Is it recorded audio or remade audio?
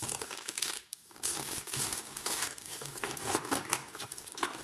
remade